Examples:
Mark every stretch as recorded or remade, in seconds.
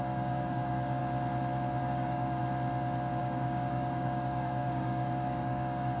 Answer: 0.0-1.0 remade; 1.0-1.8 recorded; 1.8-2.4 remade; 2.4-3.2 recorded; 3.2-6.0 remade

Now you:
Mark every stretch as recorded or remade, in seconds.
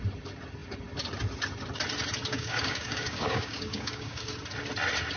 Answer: 0.0-2.3 recorded; 2.3-4.3 remade; 4.3-5.2 recorded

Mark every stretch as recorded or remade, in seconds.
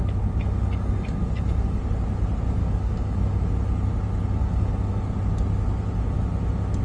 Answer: 0.0-1.8 remade; 1.8-2.6 recorded; 2.6-3.4 remade; 3.4-4.4 recorded; 4.4-5.0 remade; 5.0-6.8 recorded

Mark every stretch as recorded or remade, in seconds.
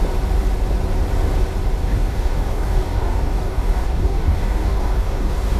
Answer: 0.0-1.8 recorded; 1.8-5.6 remade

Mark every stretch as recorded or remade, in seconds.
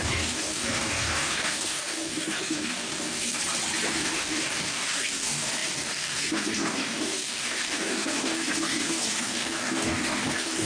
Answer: 0.0-3.4 remade; 3.4-3.9 recorded; 3.9-10.7 remade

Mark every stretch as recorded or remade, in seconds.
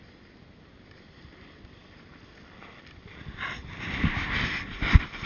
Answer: 0.0-5.3 recorded